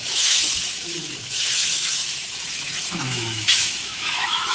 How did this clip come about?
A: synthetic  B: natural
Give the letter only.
A